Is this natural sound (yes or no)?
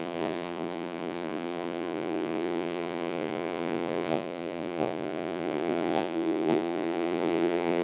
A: no